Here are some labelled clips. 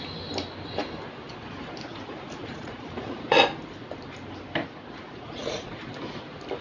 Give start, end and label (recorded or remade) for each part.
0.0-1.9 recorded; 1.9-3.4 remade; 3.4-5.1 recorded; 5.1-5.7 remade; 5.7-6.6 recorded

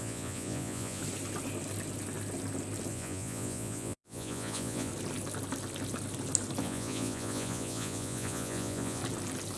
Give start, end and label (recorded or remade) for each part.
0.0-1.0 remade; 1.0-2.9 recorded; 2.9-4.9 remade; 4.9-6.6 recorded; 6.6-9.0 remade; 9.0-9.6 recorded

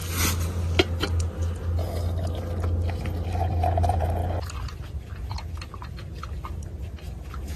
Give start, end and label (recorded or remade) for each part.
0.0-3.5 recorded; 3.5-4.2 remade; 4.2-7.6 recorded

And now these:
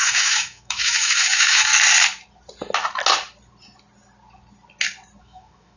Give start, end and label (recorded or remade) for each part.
0.0-1.7 remade; 1.7-5.2 recorded; 5.2-5.8 remade

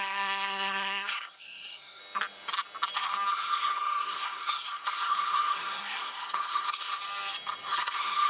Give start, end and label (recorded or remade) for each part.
0.0-2.0 remade; 2.0-3.3 recorded; 3.3-6.9 remade; 6.9-7.7 recorded; 7.7-8.3 remade

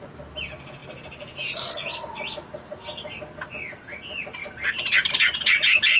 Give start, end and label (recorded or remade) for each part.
0.0-0.8 recorded; 0.8-1.7 remade; 1.7-4.4 recorded; 4.4-6.0 remade

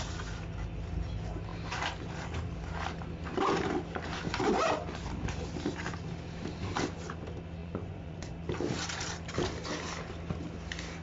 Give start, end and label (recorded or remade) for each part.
0.0-7.6 recorded; 7.6-8.2 remade; 8.2-11.0 recorded